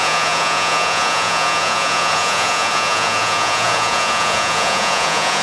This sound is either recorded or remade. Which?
remade